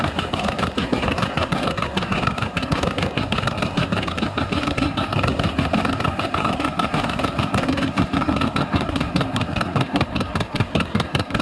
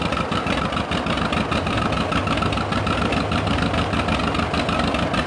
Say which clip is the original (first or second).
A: second